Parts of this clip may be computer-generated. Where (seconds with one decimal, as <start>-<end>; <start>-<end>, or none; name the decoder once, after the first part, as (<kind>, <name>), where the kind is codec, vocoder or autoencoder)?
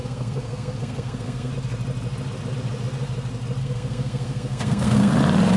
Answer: 0.0-1.5 (codec, SNAC); 3.6-5.1